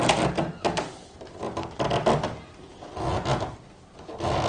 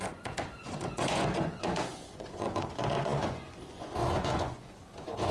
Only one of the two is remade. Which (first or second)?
second